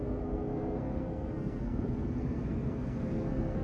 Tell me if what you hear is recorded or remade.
remade